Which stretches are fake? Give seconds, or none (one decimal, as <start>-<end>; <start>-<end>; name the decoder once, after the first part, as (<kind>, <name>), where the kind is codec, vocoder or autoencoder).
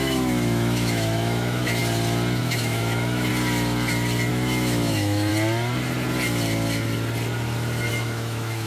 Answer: 0.0-1.8 (autoencoder, DAC-VAE); 2.4-3.3; 4.3-5.3; 7.9-8.7